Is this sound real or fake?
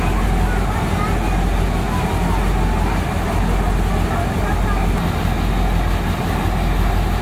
real